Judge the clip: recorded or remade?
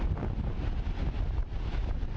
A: recorded